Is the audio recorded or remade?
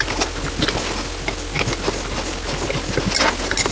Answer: recorded